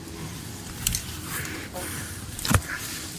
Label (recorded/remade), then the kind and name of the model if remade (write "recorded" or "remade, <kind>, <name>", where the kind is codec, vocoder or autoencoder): remade, vocoder, BigVGAN v2